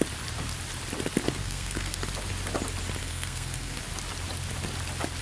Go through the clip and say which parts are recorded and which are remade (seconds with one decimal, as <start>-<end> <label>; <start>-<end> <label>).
0.0-1.4 recorded; 1.4-2.0 remade; 2.0-3.0 recorded; 3.0-3.8 remade; 3.8-5.2 recorded